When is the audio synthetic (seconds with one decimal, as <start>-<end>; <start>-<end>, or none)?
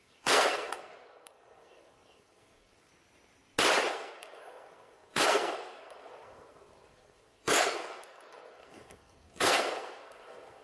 0.0-2.9; 3.9-10.6